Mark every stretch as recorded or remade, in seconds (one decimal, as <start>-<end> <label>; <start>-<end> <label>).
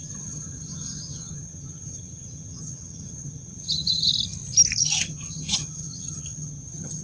0.0-4.1 remade; 4.1-4.8 recorded; 4.8-7.0 remade